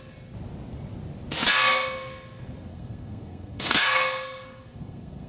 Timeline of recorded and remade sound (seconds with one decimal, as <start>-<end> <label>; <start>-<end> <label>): 0.0-2.7 recorded; 2.7-5.3 remade